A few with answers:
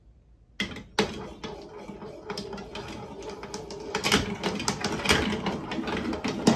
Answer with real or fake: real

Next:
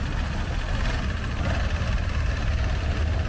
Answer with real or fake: real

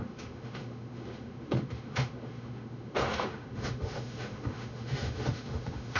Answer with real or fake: fake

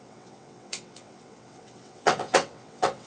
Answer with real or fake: fake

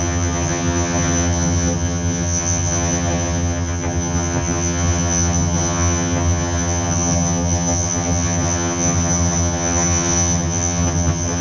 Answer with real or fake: fake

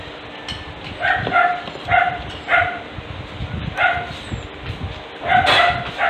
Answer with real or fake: real